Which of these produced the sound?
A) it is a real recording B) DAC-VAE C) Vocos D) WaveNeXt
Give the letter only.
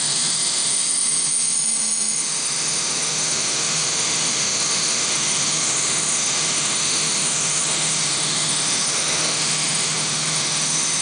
B